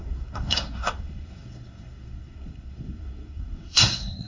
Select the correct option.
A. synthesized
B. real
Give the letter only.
A